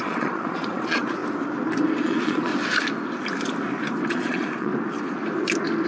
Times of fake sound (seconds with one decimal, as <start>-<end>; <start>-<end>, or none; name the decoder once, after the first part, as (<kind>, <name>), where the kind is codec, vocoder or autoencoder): 0.0-1.2 (vocoder, Vocos); 2.0-2.5; 4.1-4.7